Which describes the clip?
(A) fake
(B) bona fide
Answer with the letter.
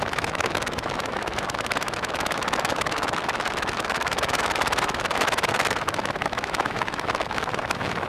A